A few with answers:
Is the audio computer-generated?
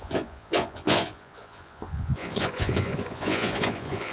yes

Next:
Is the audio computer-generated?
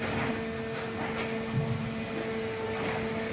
no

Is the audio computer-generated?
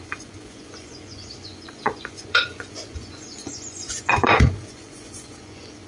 yes